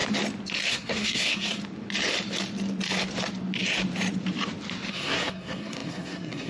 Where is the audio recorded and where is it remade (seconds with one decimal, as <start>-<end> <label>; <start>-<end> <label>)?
0.0-0.7 recorded; 0.7-1.6 remade; 1.6-4.9 recorded; 4.9-6.5 remade